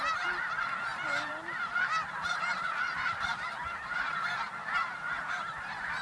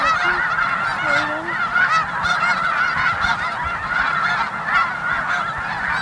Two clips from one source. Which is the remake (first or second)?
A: first